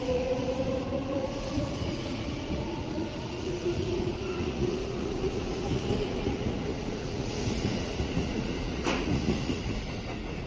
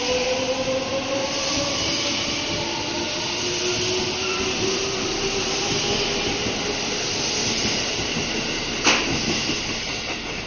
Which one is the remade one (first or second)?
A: first